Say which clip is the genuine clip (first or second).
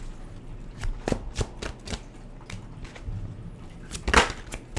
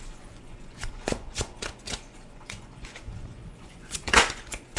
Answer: first